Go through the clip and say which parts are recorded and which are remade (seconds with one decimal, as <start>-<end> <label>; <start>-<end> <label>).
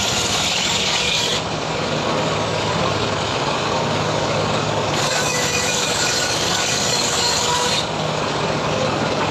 0.0-9.3 remade